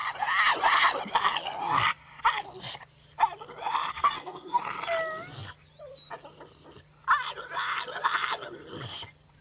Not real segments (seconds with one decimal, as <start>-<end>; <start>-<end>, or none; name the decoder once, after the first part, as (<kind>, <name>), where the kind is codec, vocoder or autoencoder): 3.9-4.6 (codec, SNAC)